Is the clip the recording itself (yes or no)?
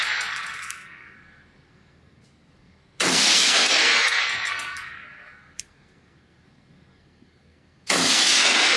no